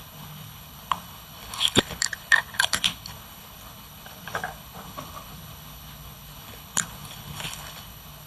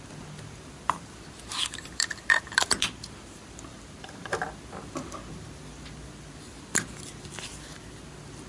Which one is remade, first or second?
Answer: first